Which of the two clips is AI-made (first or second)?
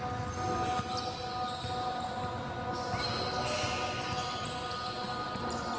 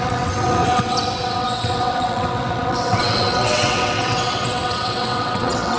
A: second